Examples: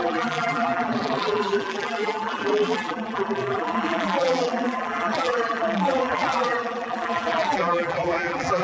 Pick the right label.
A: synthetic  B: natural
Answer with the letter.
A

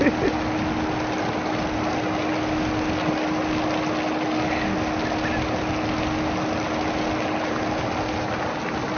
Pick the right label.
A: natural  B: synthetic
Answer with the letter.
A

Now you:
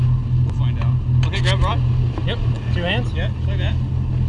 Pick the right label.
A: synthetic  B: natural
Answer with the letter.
B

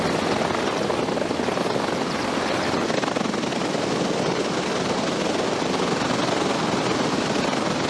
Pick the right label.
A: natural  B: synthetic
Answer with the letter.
A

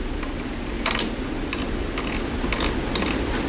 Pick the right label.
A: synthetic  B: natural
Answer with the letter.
B